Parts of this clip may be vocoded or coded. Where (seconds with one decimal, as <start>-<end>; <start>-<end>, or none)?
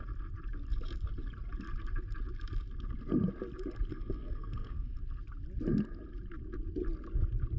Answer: 3.9-5.0